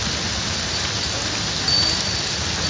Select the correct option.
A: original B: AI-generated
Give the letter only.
A